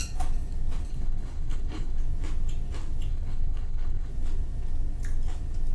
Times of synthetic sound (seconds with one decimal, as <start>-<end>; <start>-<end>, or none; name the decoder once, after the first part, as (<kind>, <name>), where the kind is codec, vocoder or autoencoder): 0.9-2.0 (codec, HILCodec); 3.1-4.1